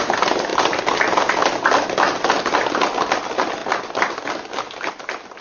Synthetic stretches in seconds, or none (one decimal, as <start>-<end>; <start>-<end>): none